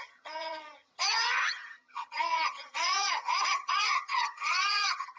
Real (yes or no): no